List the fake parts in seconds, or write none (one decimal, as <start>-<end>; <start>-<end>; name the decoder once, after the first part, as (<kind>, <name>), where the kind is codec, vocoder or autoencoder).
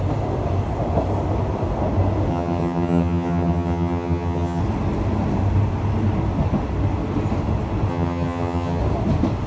2.3-4.6 (vocoder, HiFi-GAN); 7.9-8.8